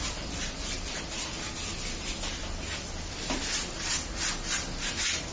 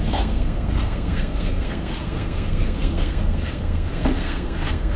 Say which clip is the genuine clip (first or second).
first